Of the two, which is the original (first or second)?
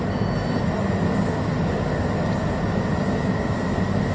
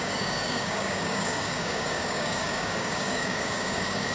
first